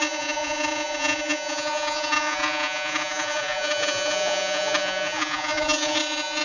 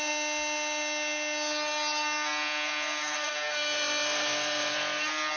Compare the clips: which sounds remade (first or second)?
first